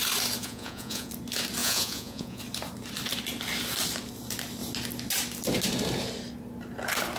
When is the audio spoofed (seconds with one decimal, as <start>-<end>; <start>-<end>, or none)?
0.4-1.1; 1.6-2.4